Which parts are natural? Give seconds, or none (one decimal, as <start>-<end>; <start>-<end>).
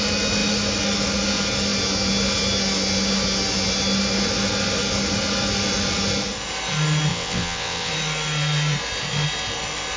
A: 0.0-7.1; 7.9-10.0